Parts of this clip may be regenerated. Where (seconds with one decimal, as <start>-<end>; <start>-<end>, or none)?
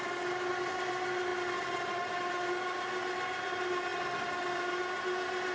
none